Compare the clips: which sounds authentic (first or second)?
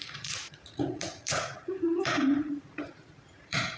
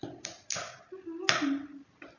second